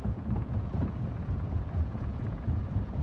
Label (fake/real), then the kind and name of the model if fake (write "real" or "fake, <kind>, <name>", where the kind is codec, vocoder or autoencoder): fake, vocoder, Vocos